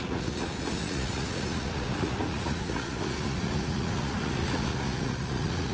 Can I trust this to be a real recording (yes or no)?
no